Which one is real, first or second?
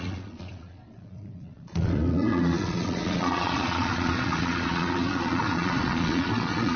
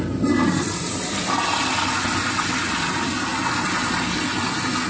second